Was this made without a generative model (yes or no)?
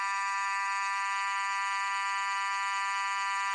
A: no